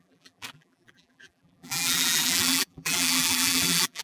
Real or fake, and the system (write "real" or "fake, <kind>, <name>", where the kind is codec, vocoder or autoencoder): fake, vocoder, BigVGAN v2